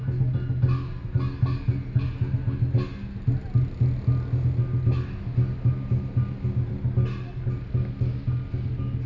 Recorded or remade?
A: recorded